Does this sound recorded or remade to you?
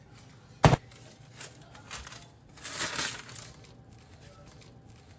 recorded